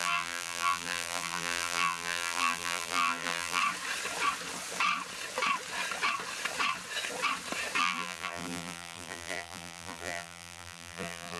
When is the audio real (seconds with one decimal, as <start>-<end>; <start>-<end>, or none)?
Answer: 3.6-7.8